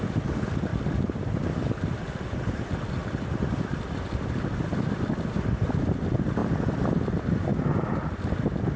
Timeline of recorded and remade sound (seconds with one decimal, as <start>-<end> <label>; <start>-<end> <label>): 0.0-0.7 recorded; 0.7-2.6 remade; 2.6-3.0 recorded; 3.0-5.8 remade; 5.8-7.5 recorded; 7.5-8.4 remade; 8.4-8.8 recorded